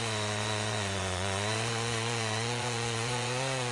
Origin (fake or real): fake